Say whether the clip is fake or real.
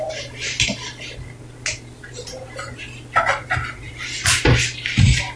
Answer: real